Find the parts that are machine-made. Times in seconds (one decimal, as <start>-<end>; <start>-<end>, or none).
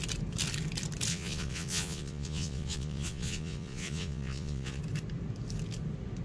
1.1-4.8